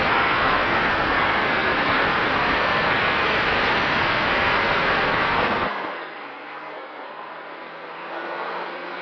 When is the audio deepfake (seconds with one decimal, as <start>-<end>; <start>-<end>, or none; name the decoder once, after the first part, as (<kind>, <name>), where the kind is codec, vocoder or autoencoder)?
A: 0.0-9.0 (codec, SNAC)